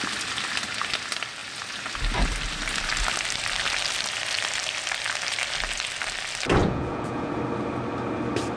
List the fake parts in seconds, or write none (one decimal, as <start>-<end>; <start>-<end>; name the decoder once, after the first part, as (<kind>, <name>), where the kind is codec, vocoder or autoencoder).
6.6-7.3 (vocoder, Vocos)